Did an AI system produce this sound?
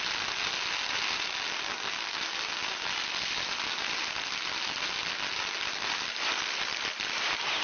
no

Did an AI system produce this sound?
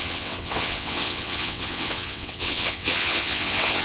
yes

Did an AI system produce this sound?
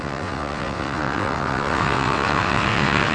yes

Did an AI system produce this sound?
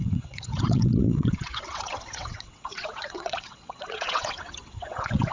yes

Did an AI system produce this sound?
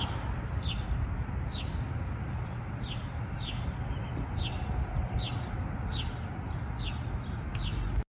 no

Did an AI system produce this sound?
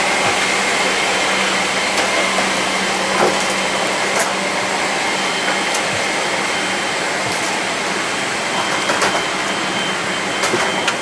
no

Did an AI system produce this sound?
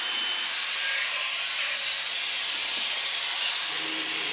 no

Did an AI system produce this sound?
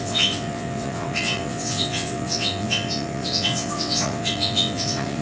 yes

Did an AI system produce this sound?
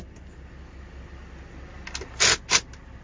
no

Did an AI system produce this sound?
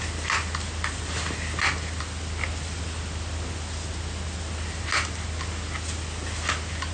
no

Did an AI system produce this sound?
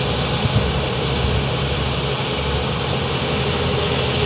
no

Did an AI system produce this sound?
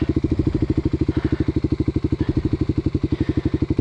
no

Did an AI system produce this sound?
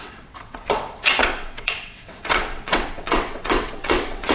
yes